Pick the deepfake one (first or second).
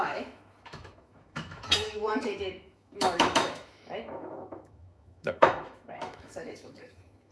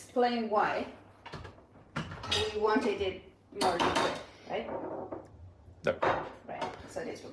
first